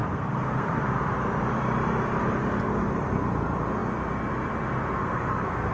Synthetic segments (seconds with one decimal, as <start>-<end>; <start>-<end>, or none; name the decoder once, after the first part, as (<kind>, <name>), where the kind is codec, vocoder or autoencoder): 0.0-0.8 (codec, SNAC); 5.0-5.7